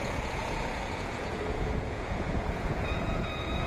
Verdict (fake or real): fake